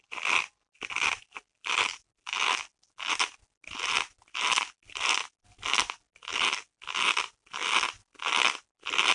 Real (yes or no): yes